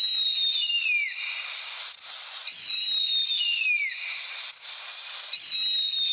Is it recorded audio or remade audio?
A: recorded